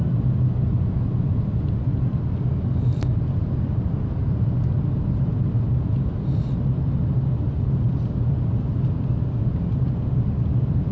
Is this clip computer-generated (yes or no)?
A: no